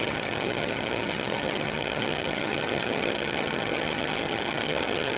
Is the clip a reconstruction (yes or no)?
yes